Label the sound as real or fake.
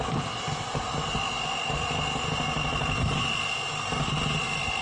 real